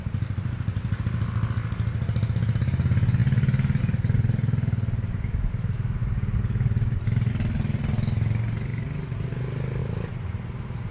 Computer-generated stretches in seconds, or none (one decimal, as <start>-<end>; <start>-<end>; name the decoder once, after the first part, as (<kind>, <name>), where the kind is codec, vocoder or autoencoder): none

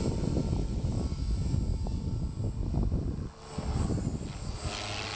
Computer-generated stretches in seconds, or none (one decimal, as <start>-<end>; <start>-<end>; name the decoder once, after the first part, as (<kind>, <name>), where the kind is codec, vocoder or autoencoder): 0.4-1.2 (autoencoder, DAC-VAE)

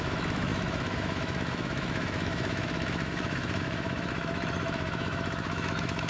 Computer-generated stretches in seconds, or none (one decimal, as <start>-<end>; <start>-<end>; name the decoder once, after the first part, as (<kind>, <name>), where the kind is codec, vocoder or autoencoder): 0.0-6.1 (autoencoder, DAC-VAE)

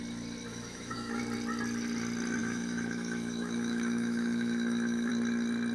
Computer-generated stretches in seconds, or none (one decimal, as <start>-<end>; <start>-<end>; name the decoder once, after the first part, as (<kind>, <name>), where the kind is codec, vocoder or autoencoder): 0.5-1.2 (autoencoder, DAC-VAE); 2.4-5.1

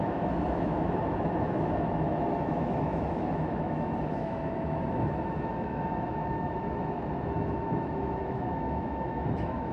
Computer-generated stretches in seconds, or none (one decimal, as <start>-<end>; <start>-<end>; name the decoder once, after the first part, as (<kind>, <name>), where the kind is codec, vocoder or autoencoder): 0.0-9.7 (autoencoder, DAC-VAE)

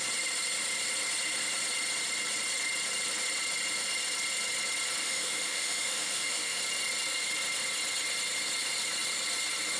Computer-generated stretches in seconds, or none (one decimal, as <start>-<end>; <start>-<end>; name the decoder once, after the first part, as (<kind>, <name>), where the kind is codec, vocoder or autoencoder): 5.0-6.6 (autoencoder, DAC-VAE)

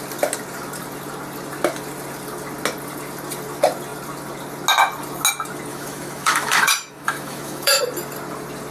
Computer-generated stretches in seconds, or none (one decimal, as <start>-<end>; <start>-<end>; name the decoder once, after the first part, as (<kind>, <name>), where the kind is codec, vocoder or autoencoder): 5.7-7.8 (autoencoder, DAC-VAE)